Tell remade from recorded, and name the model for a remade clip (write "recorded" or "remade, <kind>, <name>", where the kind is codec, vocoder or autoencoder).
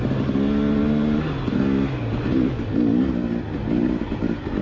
recorded